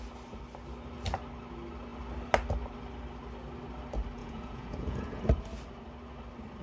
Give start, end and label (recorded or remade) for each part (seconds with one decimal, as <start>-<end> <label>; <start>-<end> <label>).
0.0-4.2 recorded; 4.2-5.2 remade; 5.2-6.6 recorded